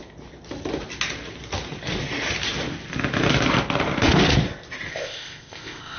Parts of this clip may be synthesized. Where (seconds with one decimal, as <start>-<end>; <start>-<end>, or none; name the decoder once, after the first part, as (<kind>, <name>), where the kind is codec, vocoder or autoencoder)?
4.9-6.0 (codec, ZipCodec)